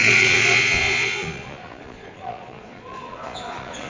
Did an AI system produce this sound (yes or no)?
yes